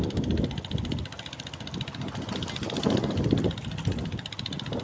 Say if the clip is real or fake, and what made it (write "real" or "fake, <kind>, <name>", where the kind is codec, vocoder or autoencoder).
real